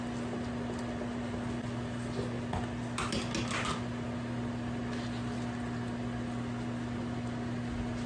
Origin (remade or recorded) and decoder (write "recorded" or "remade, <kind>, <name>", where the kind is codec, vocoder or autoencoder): recorded